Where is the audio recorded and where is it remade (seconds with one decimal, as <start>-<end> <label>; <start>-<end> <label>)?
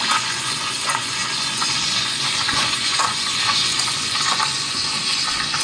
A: 0.0-5.6 remade